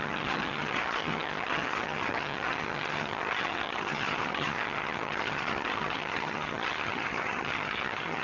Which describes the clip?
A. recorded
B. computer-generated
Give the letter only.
B